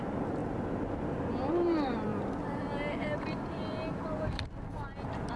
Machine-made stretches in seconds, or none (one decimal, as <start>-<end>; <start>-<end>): 0.0-0.4; 1.5-2.1